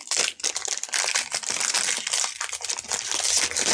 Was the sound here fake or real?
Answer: real